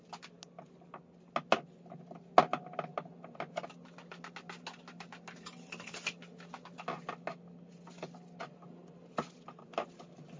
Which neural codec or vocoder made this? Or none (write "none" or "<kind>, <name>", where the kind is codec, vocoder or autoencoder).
none